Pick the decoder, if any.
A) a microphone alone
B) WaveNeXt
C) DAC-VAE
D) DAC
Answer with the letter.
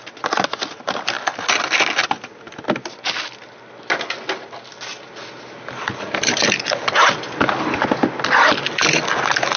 A